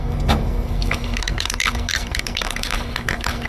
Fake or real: fake